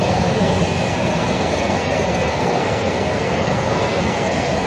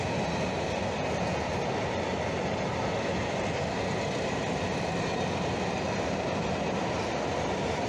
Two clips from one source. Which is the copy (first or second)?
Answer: first